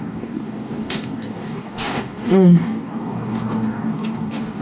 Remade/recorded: remade